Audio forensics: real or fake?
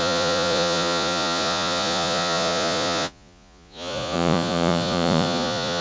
fake